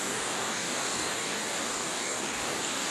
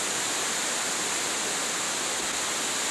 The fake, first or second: first